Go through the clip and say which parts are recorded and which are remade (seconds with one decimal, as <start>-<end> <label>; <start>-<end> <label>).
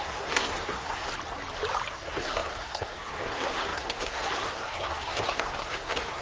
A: 0.0-1.1 remade; 1.1-1.9 recorded; 1.9-6.2 remade